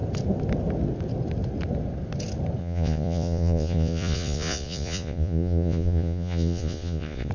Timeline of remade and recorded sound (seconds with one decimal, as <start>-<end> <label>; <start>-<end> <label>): 0.0-2.6 recorded; 2.6-7.3 remade